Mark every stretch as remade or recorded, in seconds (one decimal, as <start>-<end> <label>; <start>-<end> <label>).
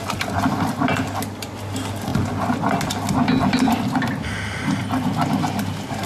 0.0-6.1 recorded